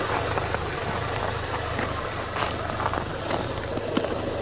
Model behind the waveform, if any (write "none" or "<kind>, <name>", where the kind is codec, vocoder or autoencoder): none